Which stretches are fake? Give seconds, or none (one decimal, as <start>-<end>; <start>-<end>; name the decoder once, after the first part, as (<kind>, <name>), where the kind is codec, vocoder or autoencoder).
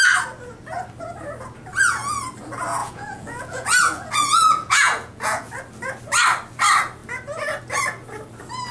1.7-2.2 (vocoder, Vocos); 2.8-5.5